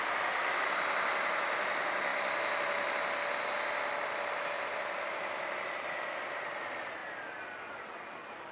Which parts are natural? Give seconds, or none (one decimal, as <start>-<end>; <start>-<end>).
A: 0.0-8.5